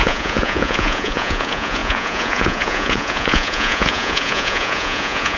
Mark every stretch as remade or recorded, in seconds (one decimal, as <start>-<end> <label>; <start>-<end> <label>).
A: 0.0-5.4 remade